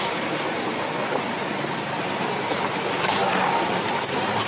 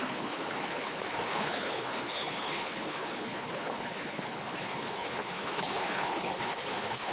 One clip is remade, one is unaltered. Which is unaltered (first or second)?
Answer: first